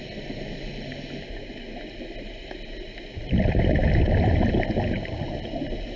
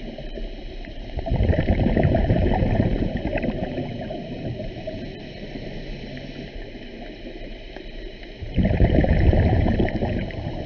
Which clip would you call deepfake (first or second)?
second